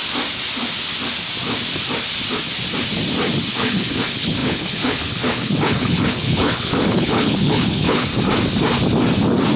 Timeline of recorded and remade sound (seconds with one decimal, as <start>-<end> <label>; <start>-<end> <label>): 0.0-3.5 recorded; 3.5-8.1 remade; 8.1-9.6 recorded

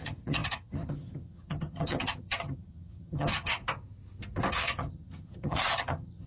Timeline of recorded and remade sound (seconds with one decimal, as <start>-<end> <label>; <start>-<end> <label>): 0.0-3.6 remade; 3.6-4.5 recorded; 4.5-6.3 remade